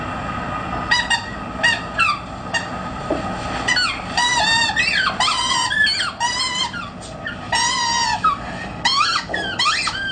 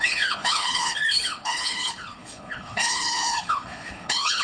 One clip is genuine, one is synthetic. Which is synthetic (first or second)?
second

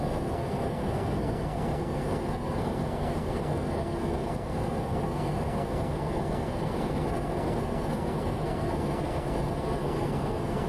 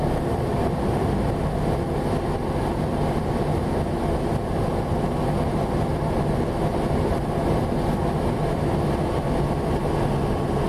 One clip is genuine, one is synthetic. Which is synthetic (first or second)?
first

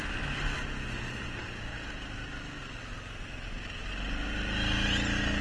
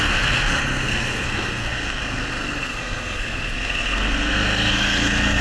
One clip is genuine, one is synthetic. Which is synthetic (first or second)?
second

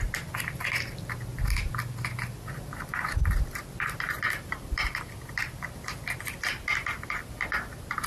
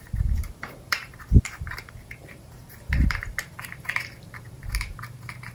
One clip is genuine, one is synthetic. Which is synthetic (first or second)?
second